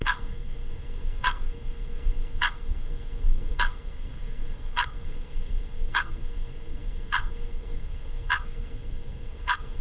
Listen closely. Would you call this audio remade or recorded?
remade